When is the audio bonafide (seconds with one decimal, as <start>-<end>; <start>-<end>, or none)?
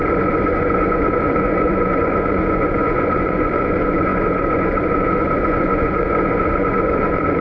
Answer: none